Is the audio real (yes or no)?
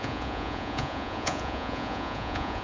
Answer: no